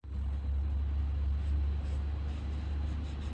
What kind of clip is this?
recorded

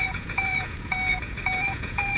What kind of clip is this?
remade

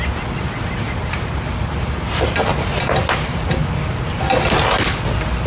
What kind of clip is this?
recorded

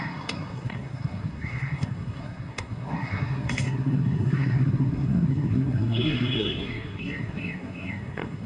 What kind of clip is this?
remade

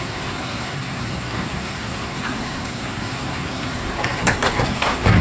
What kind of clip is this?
remade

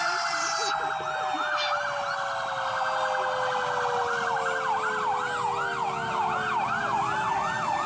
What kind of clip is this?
recorded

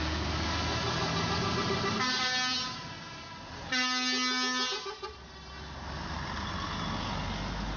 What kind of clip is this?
recorded